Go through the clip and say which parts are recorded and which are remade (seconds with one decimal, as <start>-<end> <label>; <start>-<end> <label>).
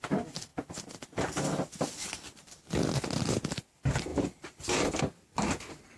0.0-0.5 recorded; 0.5-2.6 remade; 2.6-4.1 recorded; 4.1-5.0 remade; 5.0-6.0 recorded